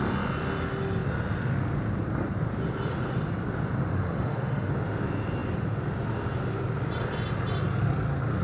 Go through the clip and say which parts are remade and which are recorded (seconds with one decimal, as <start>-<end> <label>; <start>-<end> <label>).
0.0-3.9 recorded; 3.9-4.7 remade; 4.7-8.4 recorded